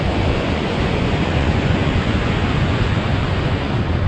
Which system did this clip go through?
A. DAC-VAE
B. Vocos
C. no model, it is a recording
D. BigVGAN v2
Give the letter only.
B